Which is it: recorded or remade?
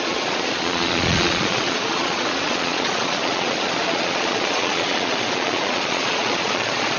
remade